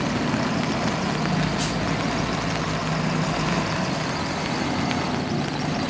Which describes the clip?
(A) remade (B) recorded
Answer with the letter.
B